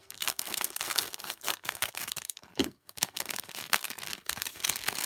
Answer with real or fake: fake